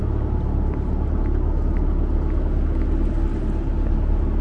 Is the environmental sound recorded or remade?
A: recorded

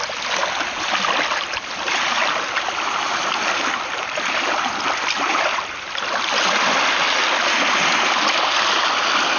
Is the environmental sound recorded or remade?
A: recorded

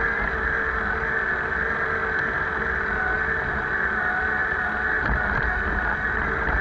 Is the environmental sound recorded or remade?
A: recorded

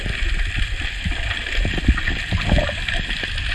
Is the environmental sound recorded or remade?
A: recorded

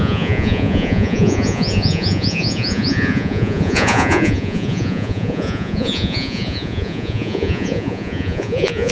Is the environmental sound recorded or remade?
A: remade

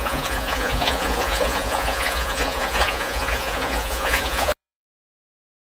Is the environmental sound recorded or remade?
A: remade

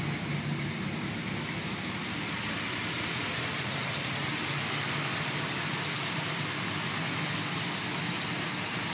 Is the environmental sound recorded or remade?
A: recorded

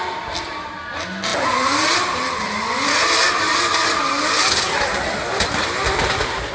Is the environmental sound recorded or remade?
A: recorded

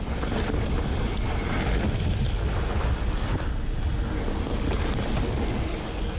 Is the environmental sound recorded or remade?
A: recorded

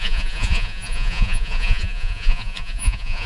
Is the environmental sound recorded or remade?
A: remade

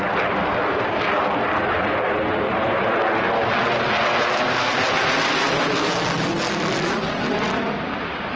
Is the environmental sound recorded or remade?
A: recorded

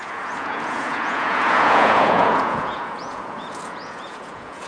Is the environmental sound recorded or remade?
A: remade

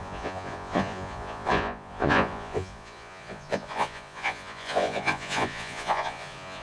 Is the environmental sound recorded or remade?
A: remade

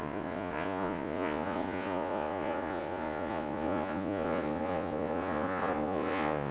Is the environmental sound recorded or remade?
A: remade